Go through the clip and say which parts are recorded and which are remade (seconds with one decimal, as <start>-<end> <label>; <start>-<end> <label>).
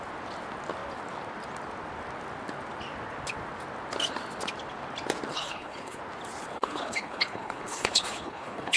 0.0-5.3 recorded; 5.3-6.0 remade; 6.0-6.5 recorded; 6.5-8.8 remade